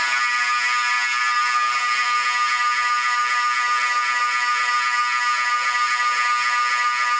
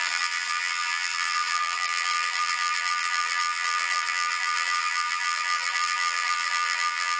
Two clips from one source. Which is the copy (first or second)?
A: second